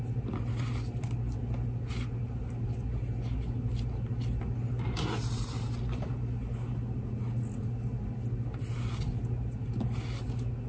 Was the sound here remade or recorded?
recorded